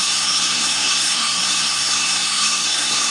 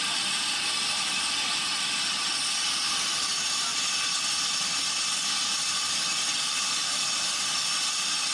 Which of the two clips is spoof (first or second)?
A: first